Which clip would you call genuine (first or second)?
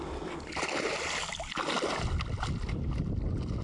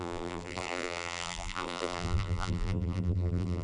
first